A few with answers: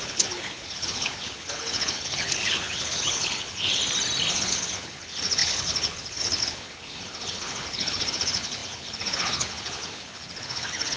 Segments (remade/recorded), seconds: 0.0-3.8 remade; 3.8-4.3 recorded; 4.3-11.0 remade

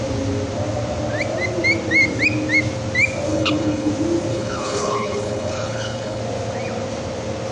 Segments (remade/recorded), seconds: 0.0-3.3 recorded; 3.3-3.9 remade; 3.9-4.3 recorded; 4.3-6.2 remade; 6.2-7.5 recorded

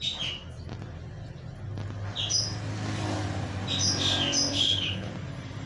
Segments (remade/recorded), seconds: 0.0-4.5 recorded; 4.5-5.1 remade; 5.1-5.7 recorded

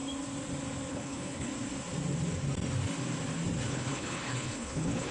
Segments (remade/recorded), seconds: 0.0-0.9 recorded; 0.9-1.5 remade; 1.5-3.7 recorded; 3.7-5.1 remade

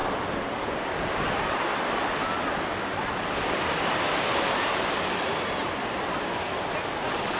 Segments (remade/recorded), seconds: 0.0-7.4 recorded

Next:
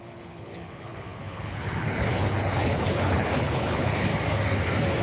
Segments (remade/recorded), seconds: 0.0-4.1 remade; 4.1-5.0 recorded

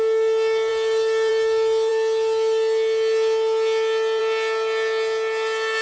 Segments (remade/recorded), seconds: 0.0-5.8 recorded